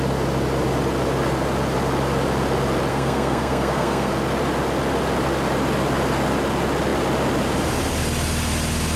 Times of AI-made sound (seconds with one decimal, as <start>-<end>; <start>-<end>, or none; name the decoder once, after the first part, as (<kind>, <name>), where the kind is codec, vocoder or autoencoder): 2.9-4.1 (codec, SNAC)